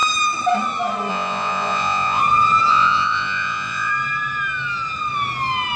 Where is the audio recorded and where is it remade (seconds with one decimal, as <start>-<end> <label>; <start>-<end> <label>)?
0.0-1.1 recorded; 1.1-2.2 remade; 2.2-2.7 recorded; 2.7-3.9 remade; 3.9-5.8 recorded